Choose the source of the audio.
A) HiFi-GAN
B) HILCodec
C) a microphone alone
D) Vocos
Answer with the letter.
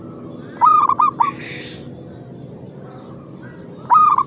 C